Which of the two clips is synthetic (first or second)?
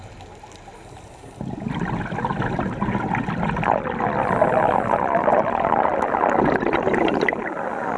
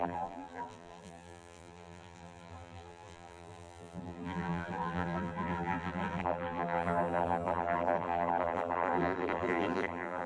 second